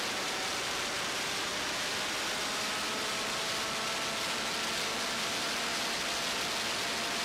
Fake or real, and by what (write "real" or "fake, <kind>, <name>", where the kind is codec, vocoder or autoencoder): real